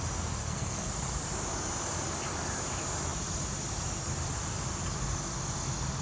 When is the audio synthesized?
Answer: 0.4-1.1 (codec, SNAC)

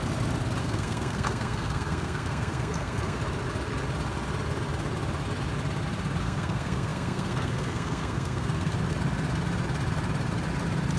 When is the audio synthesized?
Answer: 0.6-3.2 (codec, SNAC); 6.2-8.7

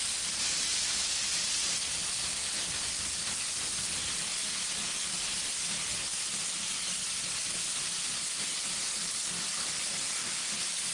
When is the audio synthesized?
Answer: none